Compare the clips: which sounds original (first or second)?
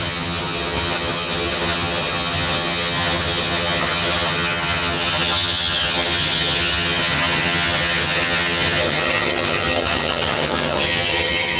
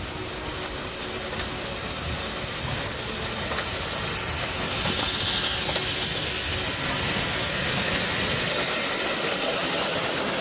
second